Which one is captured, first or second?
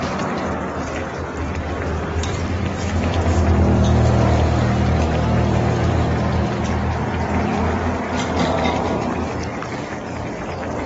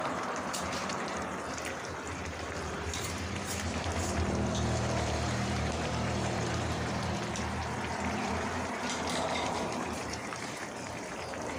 first